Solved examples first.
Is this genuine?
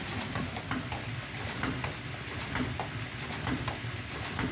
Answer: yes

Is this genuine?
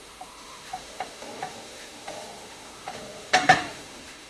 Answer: no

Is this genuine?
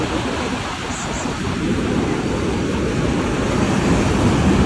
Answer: yes